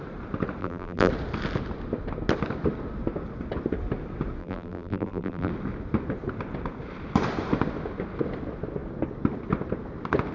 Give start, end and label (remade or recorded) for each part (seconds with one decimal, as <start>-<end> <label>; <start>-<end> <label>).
0.0-0.6 recorded; 0.6-1.1 remade; 1.1-4.4 recorded; 4.4-5.5 remade; 5.5-10.3 recorded